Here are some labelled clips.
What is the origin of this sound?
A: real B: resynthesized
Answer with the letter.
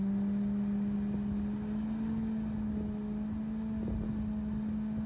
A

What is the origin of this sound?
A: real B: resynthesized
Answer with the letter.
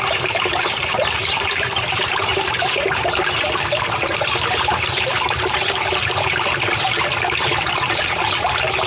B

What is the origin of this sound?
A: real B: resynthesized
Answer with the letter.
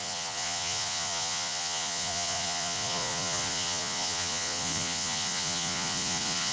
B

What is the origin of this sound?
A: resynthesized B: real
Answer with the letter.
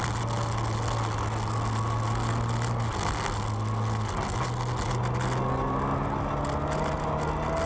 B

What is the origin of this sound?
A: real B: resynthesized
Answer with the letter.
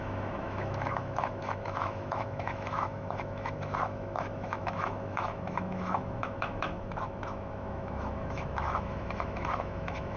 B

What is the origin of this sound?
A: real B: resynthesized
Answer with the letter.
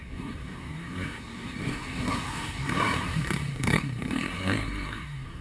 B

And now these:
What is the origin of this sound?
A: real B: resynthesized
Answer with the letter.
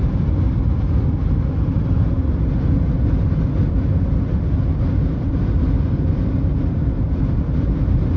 A